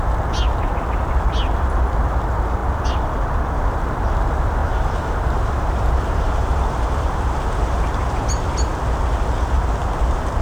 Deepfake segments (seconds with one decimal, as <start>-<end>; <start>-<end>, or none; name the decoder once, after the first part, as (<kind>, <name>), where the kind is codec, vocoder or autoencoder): 4.6-8.2 (vocoder, BigVGAN v2)